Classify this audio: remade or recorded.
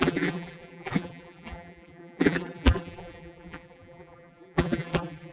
remade